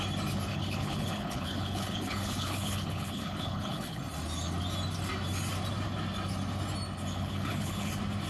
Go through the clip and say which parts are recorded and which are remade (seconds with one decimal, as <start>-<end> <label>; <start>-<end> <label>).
0.0-0.5 recorded; 0.5-4.0 remade; 4.0-7.1 recorded; 7.1-7.9 remade; 7.9-8.3 recorded